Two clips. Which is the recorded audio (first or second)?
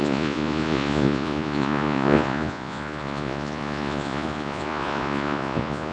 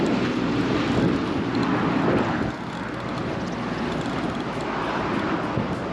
second